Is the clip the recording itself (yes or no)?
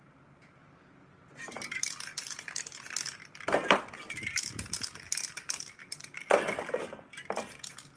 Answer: yes